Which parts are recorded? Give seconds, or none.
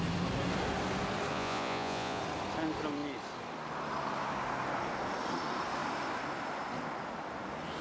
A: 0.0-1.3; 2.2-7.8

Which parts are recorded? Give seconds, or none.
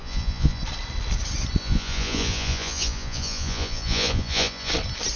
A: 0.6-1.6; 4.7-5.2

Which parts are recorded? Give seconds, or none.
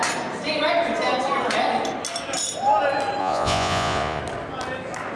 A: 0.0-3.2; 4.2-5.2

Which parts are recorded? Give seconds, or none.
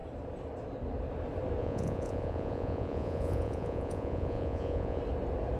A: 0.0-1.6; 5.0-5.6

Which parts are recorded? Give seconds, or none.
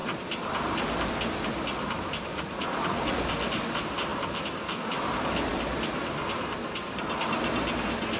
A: 0.0-2.3; 3.2-8.2